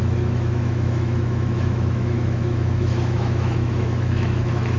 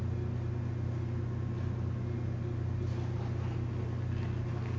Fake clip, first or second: first